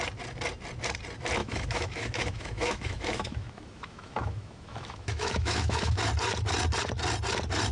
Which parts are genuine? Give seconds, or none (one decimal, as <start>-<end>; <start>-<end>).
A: 0.0-1.4; 6.0-7.7